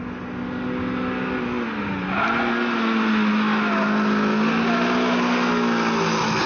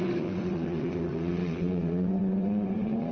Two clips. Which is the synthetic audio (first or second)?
second